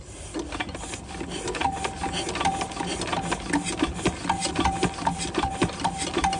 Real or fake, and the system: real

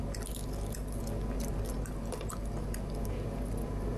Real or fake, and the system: real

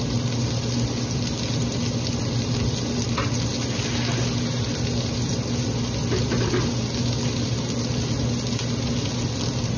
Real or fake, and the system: real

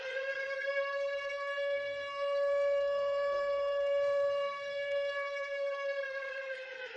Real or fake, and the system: fake, codec, SNAC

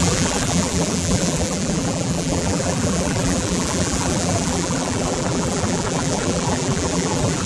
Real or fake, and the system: fake, vocoder, BigVGAN v2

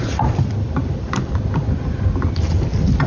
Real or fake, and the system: fake, vocoder, BigVGAN v2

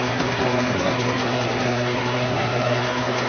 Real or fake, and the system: fake, codec, SNAC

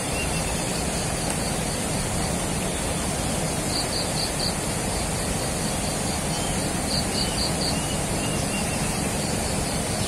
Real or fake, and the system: real